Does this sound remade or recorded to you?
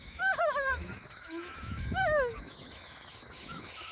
remade